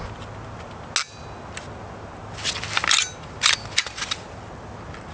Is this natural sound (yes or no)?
yes